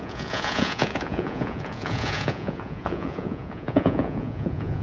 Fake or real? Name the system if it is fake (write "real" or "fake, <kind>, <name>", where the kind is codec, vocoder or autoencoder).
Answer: fake, vocoder, Vocos